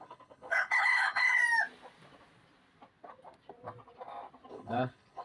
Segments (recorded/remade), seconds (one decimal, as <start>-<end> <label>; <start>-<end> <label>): 0.0-1.4 remade; 1.4-4.5 recorded; 4.5-5.2 remade